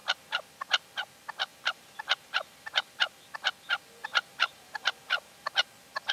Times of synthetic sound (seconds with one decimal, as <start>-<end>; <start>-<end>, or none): 0.0-0.5; 1.5-2.7; 4.0-5.5